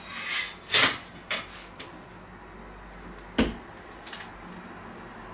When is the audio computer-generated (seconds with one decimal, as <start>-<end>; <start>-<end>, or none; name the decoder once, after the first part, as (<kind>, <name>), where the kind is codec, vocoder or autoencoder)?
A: none